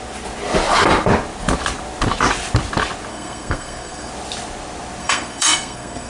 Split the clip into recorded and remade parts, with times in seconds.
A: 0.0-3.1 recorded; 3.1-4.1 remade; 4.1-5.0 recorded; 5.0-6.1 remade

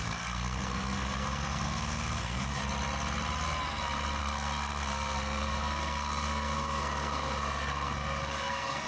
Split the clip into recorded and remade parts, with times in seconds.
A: 0.0-2.6 remade; 2.6-4.2 recorded; 4.2-8.9 remade

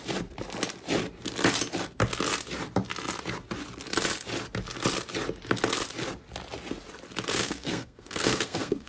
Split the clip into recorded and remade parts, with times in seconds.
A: 0.0-7.3 recorded; 7.3-8.9 remade

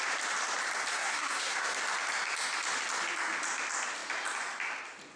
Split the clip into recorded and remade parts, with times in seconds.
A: 0.0-0.9 recorded; 0.9-1.8 remade; 1.8-5.2 recorded

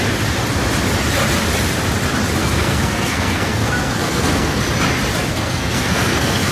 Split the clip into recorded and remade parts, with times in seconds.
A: 0.0-2.4 recorded; 2.4-4.6 remade; 4.6-5.3 recorded; 5.3-6.5 remade

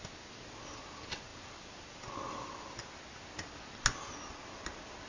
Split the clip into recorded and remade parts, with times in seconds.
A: 0.0-5.1 recorded